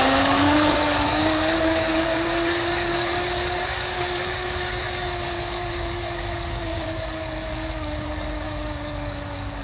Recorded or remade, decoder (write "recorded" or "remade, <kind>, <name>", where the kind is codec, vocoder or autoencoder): remade, codec, DAC